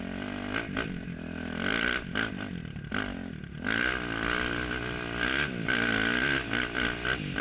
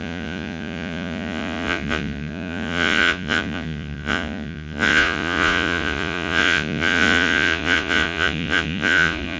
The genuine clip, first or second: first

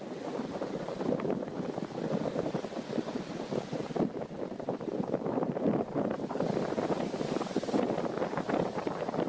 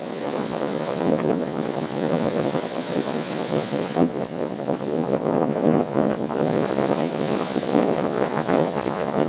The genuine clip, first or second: first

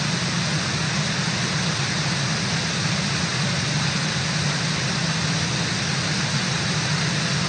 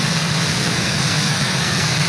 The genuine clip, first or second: first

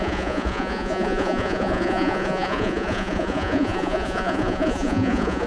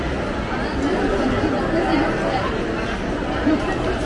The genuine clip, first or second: second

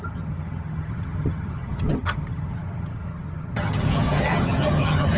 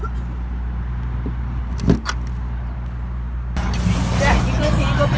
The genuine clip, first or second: second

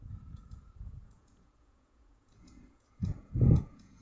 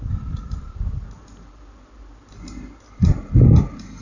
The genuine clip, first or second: second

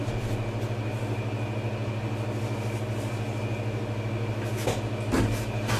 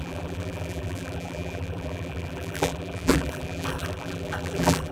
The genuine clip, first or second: first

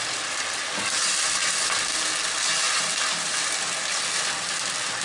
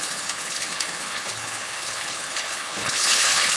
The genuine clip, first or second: first